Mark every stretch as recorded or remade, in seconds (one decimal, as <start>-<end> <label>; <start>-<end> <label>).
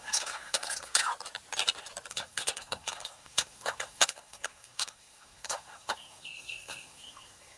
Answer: 0.0-1.1 remade; 1.1-2.1 recorded; 2.1-7.6 remade